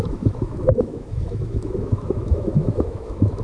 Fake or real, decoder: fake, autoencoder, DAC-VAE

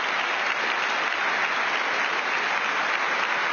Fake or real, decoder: real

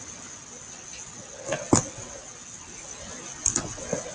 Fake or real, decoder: real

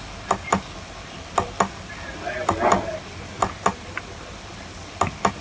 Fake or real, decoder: real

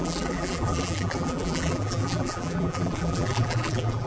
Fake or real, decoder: fake, vocoder, BigVGAN v2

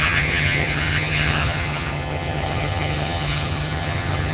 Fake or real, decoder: fake, vocoder, HiFi-GAN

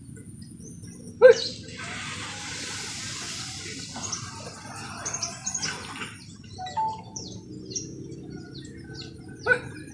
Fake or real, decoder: real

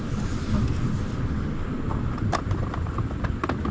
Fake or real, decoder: real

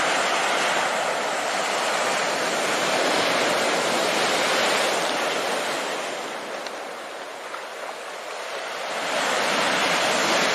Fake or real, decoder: real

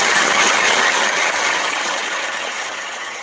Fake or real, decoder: fake, vocoder, HiFi-GAN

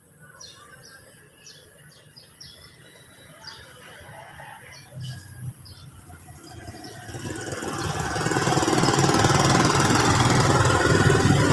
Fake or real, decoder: real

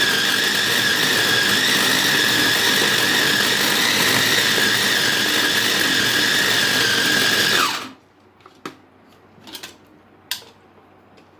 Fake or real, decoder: real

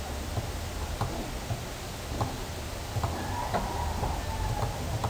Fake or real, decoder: real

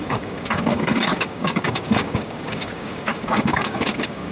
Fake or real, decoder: fake, codec, DAC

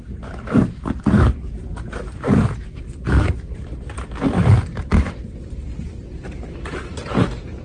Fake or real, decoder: fake, vocoder, BigVGAN v2